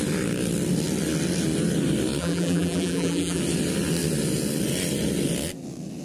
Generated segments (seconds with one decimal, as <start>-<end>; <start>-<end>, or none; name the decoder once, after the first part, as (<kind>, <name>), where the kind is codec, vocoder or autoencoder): 2.2-3.4 (vocoder, BigVGAN v2)